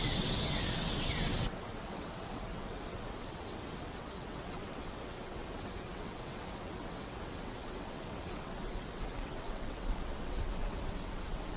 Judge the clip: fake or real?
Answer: fake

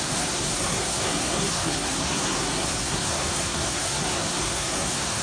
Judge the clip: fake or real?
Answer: fake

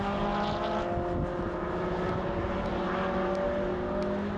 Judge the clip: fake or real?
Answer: real